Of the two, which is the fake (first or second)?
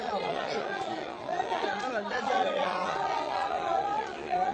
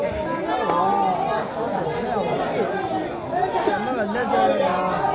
first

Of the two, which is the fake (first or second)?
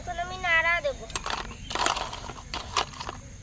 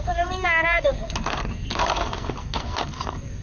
second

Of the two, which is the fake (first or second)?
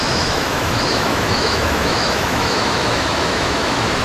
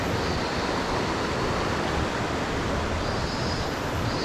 first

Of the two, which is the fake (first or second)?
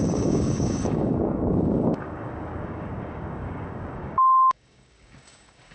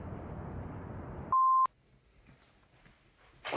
first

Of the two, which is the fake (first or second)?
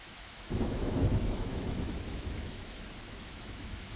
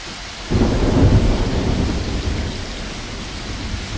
first